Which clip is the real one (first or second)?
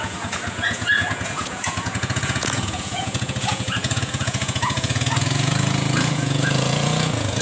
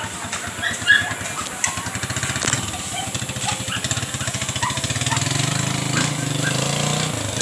second